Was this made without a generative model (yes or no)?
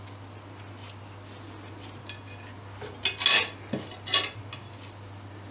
yes